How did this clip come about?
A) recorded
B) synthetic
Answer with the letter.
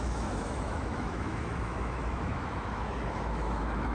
B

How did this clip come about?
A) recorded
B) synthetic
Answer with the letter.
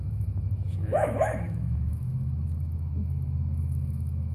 B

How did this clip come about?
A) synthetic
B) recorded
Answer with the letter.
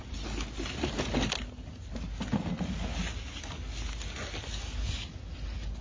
B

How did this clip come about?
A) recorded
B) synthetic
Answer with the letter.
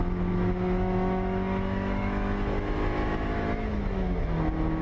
B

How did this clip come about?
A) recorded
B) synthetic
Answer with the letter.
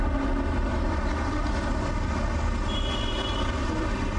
A